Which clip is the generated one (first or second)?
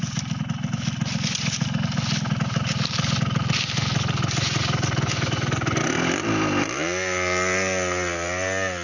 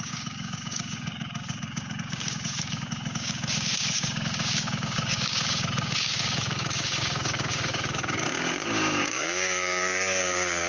second